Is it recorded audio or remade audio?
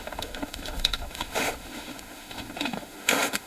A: remade